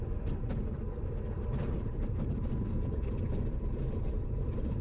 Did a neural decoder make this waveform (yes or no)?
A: no